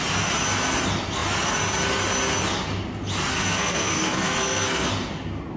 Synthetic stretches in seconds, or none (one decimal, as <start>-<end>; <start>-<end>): 3.3-4.9